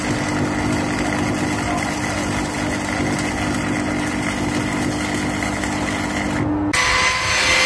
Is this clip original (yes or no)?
yes